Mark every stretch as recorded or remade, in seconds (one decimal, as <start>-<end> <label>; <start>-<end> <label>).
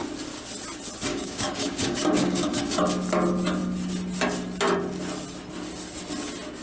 0.0-1.1 recorded; 1.1-2.6 remade; 2.6-6.6 recorded